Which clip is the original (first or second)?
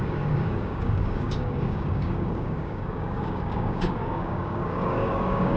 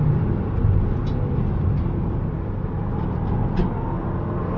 second